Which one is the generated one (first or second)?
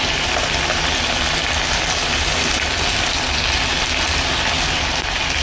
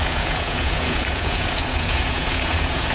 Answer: second